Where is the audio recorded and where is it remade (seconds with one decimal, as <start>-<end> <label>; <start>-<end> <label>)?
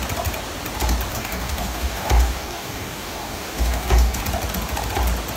0.0-1.1 recorded; 1.1-4.2 remade; 4.2-5.4 recorded